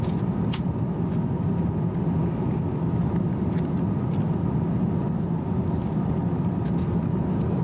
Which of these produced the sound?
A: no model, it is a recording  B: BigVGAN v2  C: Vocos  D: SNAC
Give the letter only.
A